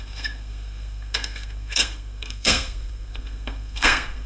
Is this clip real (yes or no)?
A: no